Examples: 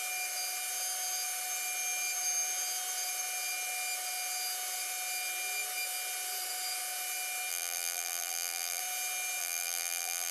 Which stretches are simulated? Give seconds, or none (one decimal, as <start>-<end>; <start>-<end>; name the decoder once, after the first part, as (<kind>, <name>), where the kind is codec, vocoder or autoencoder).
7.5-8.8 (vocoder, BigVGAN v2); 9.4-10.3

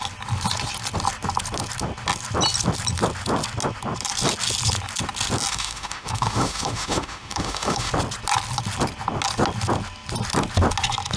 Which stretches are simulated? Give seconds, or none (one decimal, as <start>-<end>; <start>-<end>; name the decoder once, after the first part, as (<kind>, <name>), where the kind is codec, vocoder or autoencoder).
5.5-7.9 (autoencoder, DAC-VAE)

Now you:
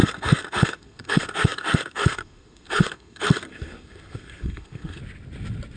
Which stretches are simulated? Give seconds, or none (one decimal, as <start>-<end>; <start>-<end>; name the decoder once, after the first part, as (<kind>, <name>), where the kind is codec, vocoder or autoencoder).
0.0-5.0 (codec, SNAC)

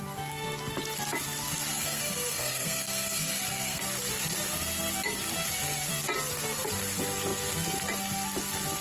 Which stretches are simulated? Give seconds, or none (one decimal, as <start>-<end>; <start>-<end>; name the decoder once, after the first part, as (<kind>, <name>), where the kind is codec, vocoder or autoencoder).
1.7-3.8 (codec, SNAC)

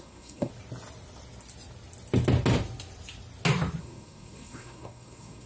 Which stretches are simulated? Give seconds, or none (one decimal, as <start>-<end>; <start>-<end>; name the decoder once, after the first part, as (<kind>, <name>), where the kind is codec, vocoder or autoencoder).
0.0-0.5 (codec, SNAC); 3.8-5.5

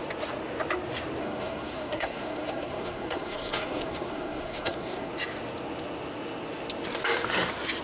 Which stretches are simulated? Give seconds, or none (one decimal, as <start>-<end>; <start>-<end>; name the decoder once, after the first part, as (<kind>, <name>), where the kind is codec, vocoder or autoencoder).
1.2-5.1 (codec, SNAC)

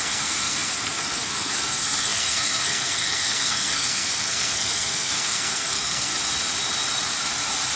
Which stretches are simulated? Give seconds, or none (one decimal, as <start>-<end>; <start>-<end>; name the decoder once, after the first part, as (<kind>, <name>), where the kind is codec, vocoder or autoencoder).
0.0-6.1 (codec, SNAC)

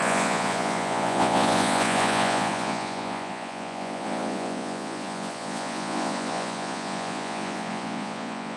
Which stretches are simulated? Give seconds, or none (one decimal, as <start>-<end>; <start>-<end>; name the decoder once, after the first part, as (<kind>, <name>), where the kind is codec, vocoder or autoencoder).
0.0-8.6 (vocoder, Vocos)